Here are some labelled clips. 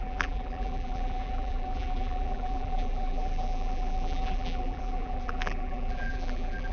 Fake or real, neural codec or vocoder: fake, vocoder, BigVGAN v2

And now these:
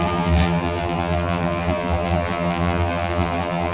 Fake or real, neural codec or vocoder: fake, vocoder, BigVGAN v2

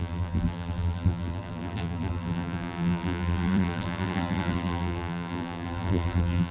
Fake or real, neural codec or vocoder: fake, vocoder, BigVGAN v2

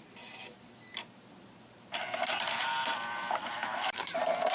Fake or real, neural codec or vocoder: fake, vocoder, BigVGAN v2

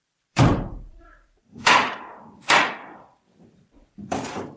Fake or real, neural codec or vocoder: fake, vocoder, BigVGAN v2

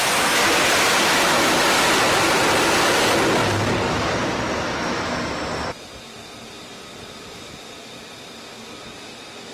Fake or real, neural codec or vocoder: real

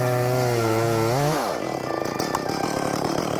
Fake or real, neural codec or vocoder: real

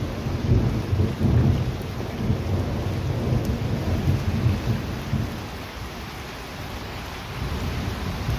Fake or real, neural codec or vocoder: real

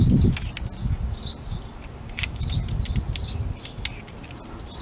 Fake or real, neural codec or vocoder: real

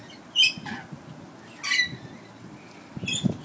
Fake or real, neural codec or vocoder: real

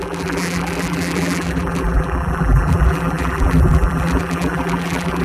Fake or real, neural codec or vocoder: fake, vocoder, BigVGAN v2